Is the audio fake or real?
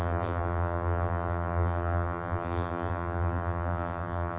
fake